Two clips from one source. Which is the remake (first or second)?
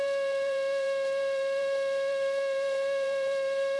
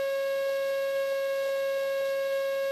first